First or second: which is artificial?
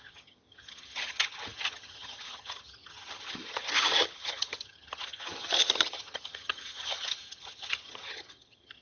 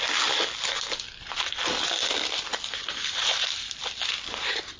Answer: first